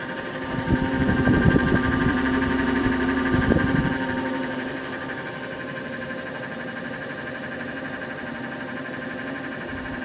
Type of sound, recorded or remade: remade